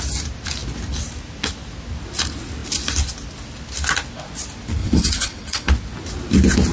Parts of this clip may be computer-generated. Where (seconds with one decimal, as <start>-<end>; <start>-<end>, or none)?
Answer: 4.8-5.7